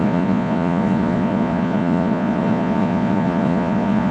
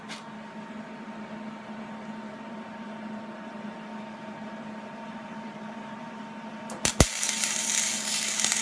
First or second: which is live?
second